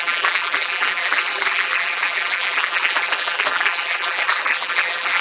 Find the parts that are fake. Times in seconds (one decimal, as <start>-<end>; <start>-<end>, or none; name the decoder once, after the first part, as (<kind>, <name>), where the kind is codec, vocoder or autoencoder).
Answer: 0.0-5.2 (vocoder, BigVGAN v2)